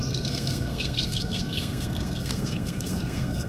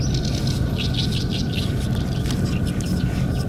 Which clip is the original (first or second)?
second